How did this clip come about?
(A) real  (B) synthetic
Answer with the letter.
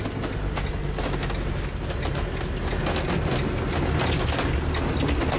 A